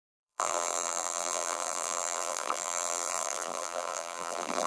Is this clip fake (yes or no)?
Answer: yes